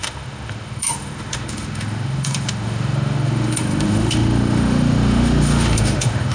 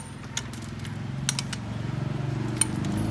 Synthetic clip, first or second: first